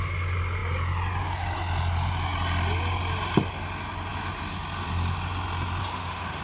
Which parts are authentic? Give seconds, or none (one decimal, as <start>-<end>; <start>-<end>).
0.0-5.8